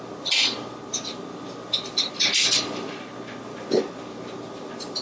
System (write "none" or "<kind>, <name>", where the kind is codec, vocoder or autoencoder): none